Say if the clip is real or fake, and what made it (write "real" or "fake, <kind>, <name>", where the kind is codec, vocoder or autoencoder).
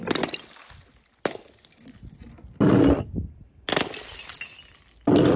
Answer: real